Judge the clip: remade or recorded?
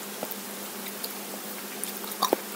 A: recorded